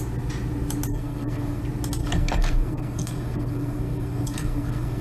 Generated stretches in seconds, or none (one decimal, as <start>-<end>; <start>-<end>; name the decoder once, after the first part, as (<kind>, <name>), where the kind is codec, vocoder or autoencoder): 0.9-1.6 (codec, SNAC); 2.0-5.0

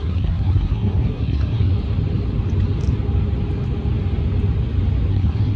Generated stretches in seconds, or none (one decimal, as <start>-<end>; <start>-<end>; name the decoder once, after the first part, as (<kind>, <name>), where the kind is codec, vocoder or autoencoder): 0.0-1.7 (codec, SNAC); 5.1-5.6